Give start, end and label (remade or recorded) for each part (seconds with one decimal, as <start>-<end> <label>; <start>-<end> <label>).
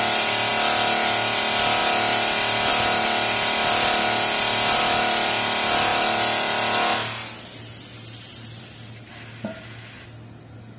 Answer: 0.0-10.8 recorded